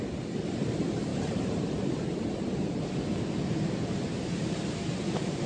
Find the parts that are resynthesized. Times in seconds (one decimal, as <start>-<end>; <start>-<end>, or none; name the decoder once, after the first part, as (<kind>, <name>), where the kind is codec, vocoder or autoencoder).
1.1-2.7 (vocoder, BigVGAN v2); 4.1-5.5